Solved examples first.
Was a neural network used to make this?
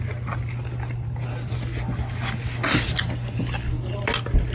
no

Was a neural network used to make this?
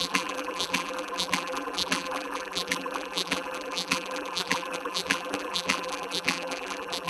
yes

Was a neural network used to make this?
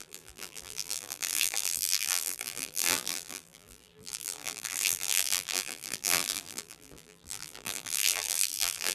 yes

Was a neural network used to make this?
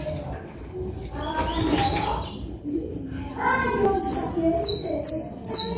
no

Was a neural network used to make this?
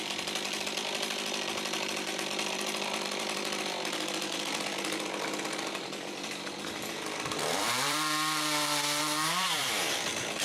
yes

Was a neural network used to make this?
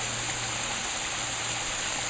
no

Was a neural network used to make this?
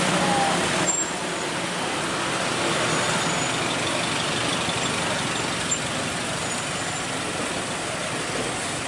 no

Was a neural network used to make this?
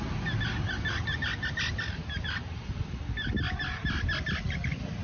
no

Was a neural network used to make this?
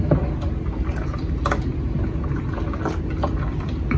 no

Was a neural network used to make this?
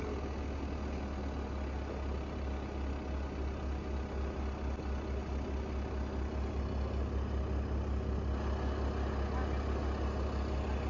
no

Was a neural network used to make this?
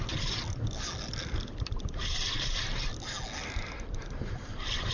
no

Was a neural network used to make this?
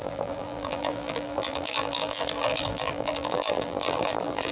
yes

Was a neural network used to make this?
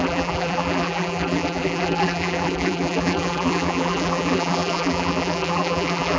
yes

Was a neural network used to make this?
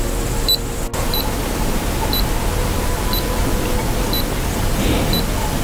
no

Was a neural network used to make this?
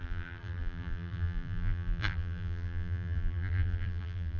yes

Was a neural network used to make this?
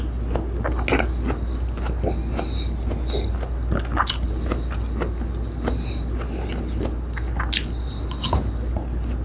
no